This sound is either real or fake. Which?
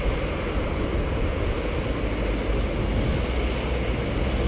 real